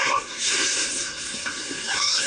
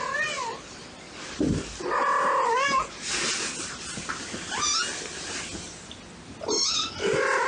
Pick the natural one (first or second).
second